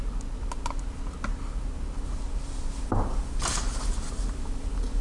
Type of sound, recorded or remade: recorded